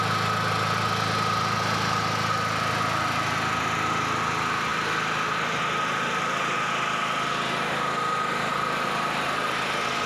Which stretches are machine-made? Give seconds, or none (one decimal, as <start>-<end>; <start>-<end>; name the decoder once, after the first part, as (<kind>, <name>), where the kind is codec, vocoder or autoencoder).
none